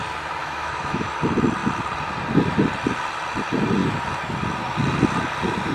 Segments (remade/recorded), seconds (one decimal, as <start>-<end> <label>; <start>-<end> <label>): 0.0-0.4 recorded; 0.4-1.2 remade; 1.2-5.7 recorded